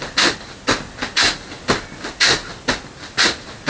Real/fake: real